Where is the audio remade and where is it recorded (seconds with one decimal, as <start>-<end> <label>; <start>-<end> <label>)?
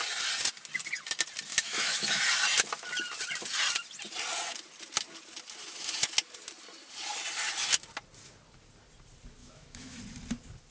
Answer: 0.0-1.5 recorded; 1.5-2.2 remade; 2.2-9.4 recorded; 9.4-10.0 remade; 10.0-10.7 recorded